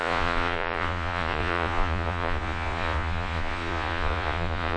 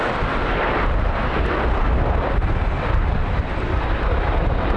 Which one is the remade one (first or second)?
first